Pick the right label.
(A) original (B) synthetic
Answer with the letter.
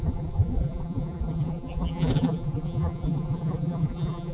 B